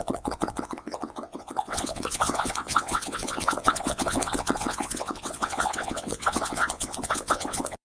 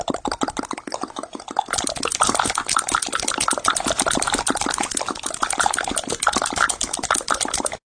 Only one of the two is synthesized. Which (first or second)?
first